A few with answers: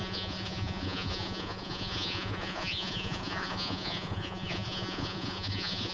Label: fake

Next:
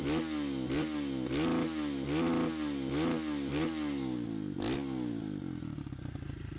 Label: real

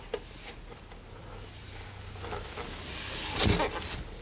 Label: real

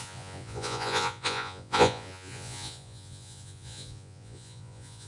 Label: fake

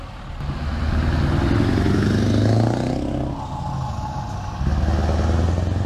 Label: real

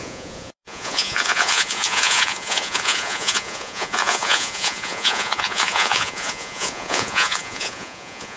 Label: fake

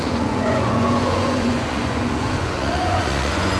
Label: fake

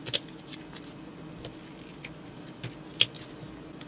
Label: real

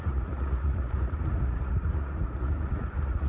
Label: fake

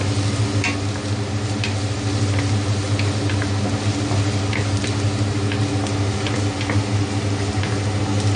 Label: real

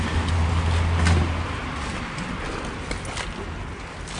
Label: real